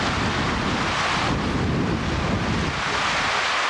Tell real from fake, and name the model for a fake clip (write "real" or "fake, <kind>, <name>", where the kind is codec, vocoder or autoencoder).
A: real